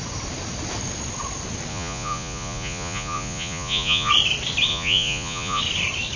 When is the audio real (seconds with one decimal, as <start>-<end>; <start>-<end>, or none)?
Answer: 0.0-1.7; 4.1-4.7; 5.6-6.2